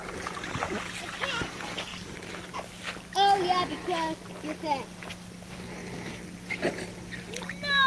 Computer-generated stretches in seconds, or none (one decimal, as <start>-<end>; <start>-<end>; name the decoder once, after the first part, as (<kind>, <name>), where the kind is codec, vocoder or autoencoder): none